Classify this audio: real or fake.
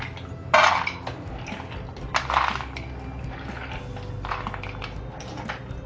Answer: real